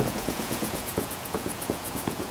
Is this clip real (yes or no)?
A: no